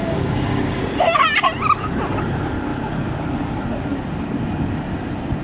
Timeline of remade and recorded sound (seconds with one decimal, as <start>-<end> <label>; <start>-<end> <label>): 0.0-0.8 remade; 0.8-5.4 recorded

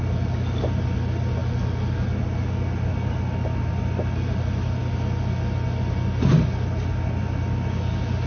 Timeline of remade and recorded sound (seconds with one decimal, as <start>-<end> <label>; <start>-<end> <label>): 0.0-8.3 recorded

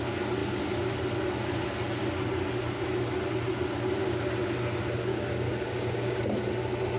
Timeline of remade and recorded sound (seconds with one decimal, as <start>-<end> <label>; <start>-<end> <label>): 0.0-5.1 recorded; 5.1-6.2 remade; 6.2-7.0 recorded

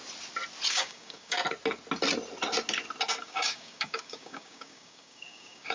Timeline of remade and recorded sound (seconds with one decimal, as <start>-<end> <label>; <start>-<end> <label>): 0.0-0.7 recorded; 0.7-1.4 remade; 1.4-3.2 recorded; 3.2-5.7 remade

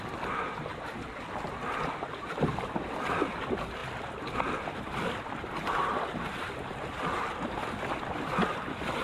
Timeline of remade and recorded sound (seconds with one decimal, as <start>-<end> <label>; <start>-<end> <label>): 0.0-9.0 recorded

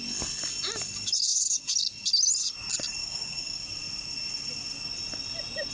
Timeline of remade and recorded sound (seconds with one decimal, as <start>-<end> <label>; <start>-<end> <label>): 0.0-3.0 recorded; 3.0-3.7 remade; 3.7-5.7 recorded

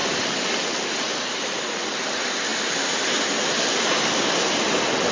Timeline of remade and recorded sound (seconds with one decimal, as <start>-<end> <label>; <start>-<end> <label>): 0.0-5.1 recorded

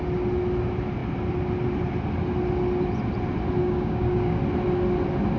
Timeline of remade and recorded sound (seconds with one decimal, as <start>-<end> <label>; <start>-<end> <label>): 0.0-3.6 recorded; 3.6-4.4 remade; 4.4-5.4 recorded